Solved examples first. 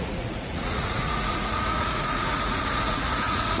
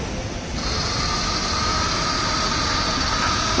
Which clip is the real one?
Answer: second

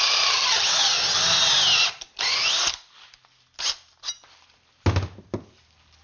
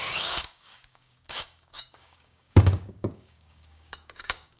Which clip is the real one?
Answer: first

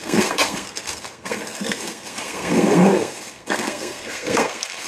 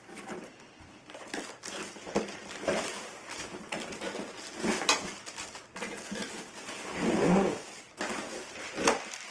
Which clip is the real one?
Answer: second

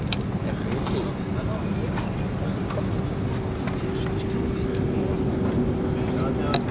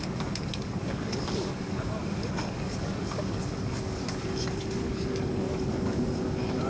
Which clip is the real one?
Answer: first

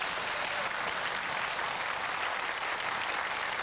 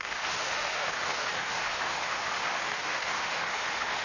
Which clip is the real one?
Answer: first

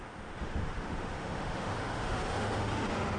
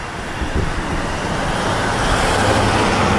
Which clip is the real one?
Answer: second